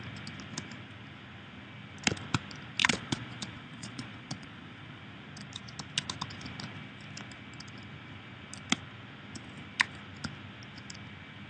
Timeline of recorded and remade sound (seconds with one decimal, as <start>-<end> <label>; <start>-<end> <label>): 0.0-2.8 recorded; 2.8-5.0 remade; 5.0-11.5 recorded